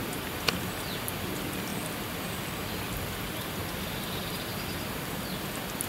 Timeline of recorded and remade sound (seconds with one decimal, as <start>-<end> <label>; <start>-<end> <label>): 0.0-5.9 remade